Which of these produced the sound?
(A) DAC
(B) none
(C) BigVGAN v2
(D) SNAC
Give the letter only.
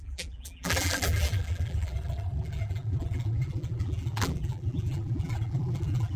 C